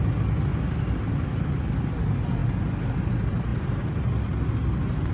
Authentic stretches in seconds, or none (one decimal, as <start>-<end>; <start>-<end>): 0.0-5.1